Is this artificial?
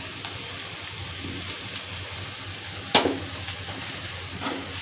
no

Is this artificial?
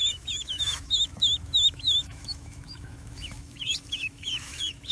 yes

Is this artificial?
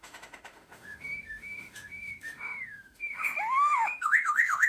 yes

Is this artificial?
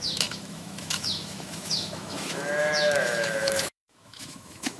yes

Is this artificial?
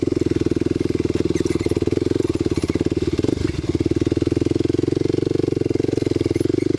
no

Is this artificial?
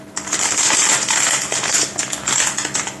no